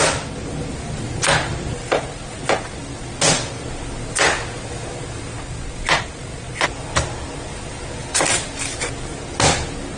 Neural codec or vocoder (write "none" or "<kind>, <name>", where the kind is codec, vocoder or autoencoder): none